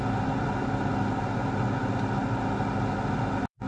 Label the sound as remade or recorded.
recorded